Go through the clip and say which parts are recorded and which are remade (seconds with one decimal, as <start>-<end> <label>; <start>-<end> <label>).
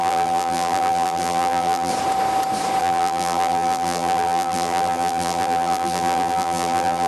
0.0-1.9 remade; 1.9-2.8 recorded; 2.8-7.1 remade